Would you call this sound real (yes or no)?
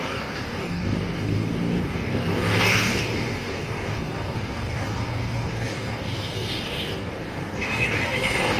no